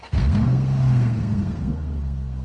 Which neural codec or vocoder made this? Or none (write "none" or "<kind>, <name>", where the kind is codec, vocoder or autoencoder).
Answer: codec, SNAC